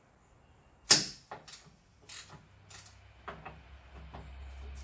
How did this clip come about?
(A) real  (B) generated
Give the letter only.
A